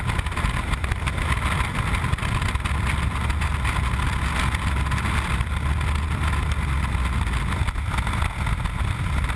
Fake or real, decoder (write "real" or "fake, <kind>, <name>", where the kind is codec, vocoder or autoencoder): real